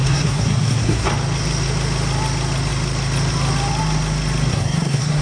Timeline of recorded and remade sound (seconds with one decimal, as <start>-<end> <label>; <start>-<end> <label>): 0.0-1.1 remade; 1.1-4.5 recorded; 4.5-5.2 remade